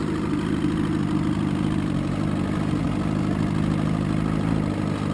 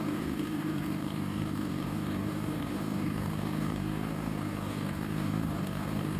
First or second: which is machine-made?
second